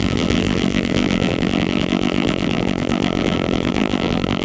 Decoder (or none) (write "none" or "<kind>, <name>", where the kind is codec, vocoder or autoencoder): vocoder, BigVGAN v2